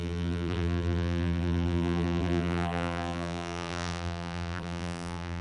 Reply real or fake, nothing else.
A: fake